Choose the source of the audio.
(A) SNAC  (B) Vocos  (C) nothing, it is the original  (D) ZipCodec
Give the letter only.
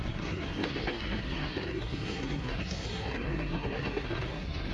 A